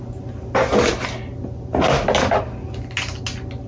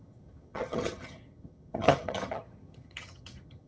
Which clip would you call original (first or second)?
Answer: first